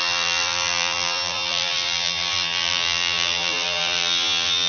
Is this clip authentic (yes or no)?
no